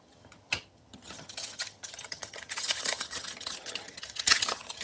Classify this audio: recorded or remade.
remade